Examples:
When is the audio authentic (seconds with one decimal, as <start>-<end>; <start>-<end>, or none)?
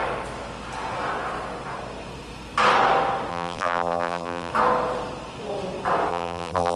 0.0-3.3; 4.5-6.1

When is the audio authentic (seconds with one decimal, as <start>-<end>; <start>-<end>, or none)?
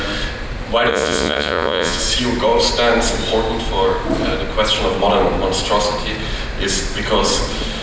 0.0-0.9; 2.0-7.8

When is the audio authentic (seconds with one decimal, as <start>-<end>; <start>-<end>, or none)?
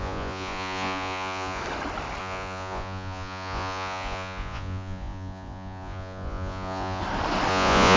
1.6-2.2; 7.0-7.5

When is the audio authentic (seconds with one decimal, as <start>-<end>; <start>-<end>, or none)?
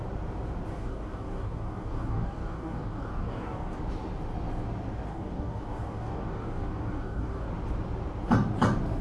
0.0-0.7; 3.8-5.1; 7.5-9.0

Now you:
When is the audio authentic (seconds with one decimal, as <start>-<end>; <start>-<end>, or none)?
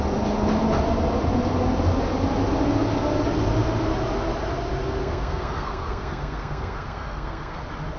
0.0-5.0; 7.6-8.0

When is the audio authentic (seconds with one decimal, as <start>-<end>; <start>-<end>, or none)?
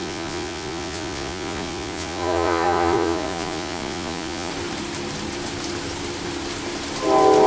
4.5-7.5